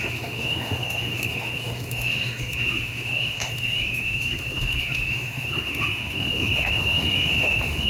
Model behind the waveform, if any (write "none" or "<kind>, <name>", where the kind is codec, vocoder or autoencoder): autoencoder, DAC-VAE